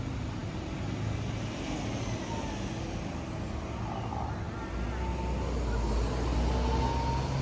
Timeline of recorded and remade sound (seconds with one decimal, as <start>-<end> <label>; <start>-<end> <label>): 0.0-7.4 recorded